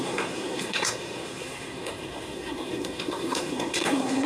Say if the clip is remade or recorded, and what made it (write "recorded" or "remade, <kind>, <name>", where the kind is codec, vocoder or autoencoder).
remade, codec, SNAC